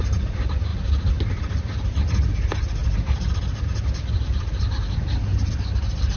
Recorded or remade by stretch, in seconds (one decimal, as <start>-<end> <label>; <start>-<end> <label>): 0.0-0.7 remade; 0.7-1.2 recorded; 1.2-2.8 remade; 2.8-4.0 recorded; 4.0-5.3 remade; 5.3-6.2 recorded